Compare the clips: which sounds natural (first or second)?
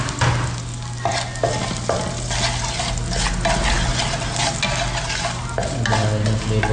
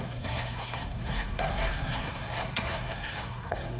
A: first